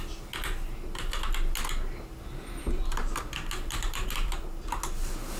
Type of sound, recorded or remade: recorded